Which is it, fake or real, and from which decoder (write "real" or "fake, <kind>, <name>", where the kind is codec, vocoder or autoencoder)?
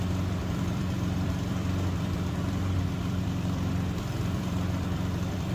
fake, vocoder, BigVGAN v2